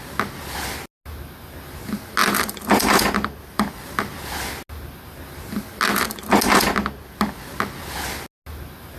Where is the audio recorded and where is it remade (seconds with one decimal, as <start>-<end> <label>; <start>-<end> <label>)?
0.0-2.2 recorded; 2.2-4.1 remade; 4.1-9.0 recorded

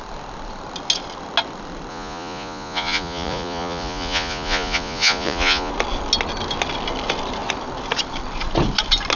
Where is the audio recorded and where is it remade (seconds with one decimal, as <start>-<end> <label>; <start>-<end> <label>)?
0.0-1.9 recorded; 1.9-5.7 remade; 5.7-9.2 recorded

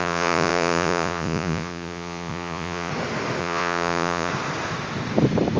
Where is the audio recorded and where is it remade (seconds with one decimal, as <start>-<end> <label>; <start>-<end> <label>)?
0.0-2.9 remade; 2.9-3.4 recorded; 3.4-4.3 remade; 4.3-5.6 recorded

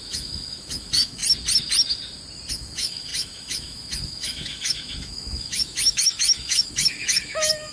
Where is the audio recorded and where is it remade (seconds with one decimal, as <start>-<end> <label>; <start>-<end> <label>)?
0.0-1.2 remade; 1.2-2.5 recorded; 2.5-7.7 remade

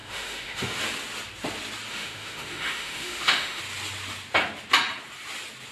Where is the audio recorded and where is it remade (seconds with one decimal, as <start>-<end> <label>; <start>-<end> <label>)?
0.0-0.8 remade; 0.8-1.9 recorded; 1.9-3.6 remade; 3.6-5.7 recorded